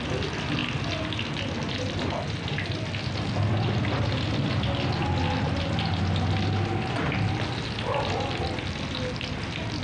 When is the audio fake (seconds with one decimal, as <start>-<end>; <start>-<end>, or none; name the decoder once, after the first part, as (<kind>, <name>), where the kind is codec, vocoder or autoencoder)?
none